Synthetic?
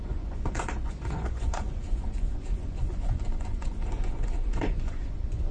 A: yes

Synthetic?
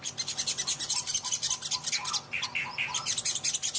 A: no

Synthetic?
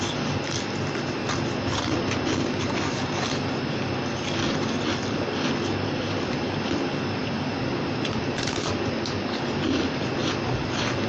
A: no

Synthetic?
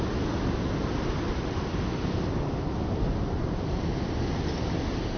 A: no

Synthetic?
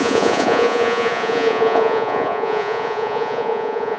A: yes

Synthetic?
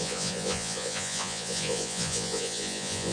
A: yes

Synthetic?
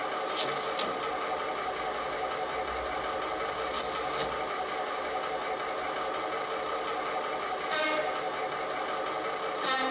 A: no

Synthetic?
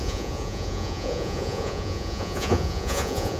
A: yes